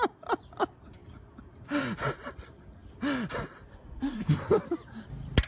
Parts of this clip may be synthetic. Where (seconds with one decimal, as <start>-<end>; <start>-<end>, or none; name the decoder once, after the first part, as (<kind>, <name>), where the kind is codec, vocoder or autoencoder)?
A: 3.7-4.6 (codec, SNAC)

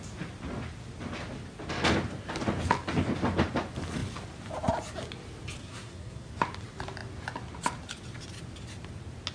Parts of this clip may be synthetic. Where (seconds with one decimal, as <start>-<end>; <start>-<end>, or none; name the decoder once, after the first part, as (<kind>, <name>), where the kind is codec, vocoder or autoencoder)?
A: 5.6-6.3 (codec, SNAC)